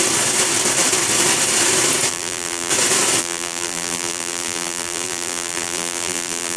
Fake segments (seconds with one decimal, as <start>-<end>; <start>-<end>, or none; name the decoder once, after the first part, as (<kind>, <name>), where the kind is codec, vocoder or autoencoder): 2.1-2.7 (vocoder, BigVGAN v2); 3.2-6.6